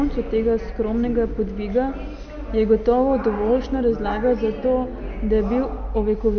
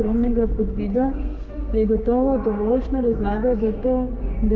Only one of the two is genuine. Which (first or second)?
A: first